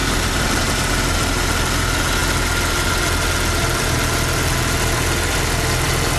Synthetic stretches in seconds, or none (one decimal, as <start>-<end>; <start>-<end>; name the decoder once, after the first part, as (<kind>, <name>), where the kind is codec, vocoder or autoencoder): 0.0-0.9 (vocoder, BigVGAN v2)